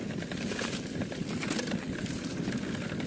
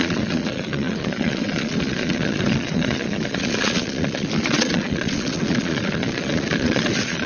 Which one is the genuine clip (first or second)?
first